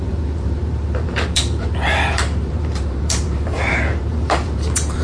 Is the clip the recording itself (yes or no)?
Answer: no